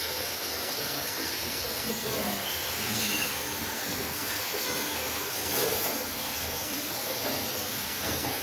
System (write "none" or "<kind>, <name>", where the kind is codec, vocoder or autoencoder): codec, SNAC